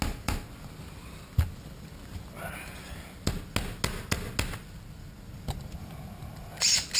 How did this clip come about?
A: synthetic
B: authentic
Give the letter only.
B